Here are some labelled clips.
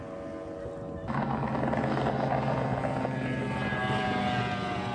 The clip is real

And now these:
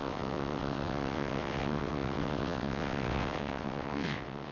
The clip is fake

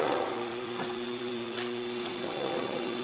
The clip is fake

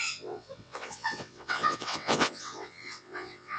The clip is fake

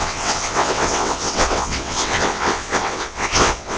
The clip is fake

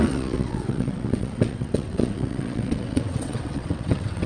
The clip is fake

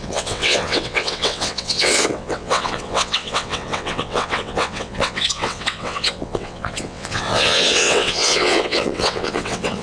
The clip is fake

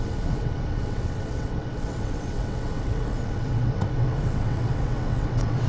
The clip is fake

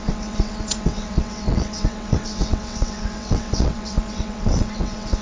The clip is fake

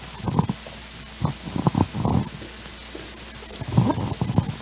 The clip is real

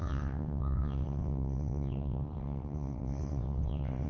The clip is fake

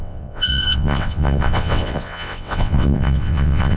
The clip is fake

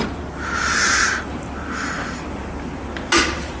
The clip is real